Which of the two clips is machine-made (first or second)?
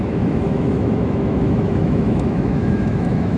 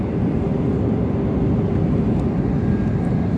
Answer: first